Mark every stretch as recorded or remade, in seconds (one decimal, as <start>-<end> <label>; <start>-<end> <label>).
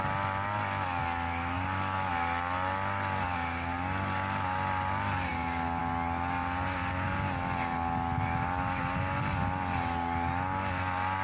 0.0-11.2 recorded